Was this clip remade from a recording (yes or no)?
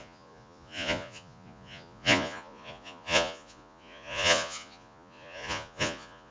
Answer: yes